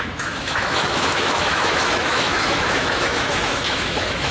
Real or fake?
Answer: fake